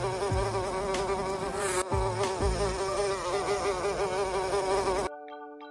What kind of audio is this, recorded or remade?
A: recorded